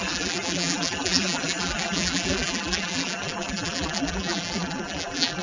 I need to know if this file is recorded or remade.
remade